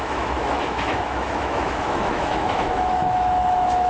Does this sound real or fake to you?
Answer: fake